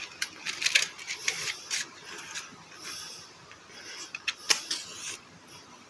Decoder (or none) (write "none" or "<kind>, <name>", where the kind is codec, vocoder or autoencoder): vocoder, BigVGAN v2